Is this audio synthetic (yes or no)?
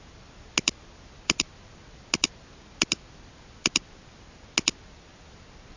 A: no